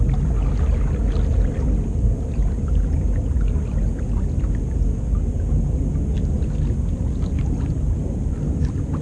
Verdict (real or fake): real